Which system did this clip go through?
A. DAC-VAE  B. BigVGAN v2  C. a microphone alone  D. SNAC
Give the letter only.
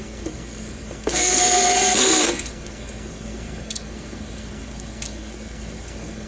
D